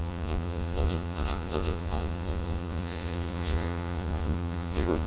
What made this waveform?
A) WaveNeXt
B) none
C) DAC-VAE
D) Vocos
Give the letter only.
D